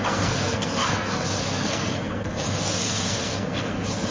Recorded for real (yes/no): no